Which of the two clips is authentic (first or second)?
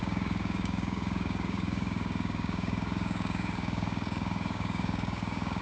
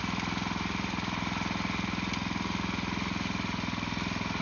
second